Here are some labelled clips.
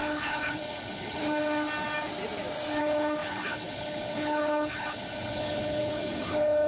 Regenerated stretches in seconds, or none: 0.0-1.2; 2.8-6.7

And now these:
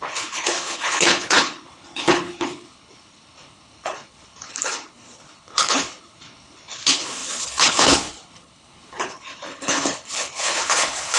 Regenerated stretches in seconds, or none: 0.0-11.2

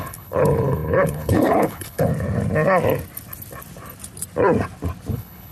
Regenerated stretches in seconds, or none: 0.0-2.1; 5.1-5.5

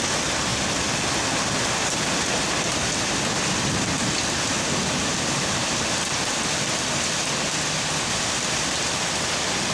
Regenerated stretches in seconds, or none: none

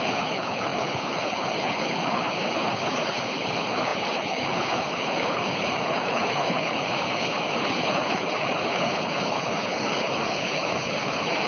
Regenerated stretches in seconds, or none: 0.0-11.5